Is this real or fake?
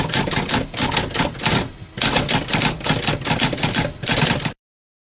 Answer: real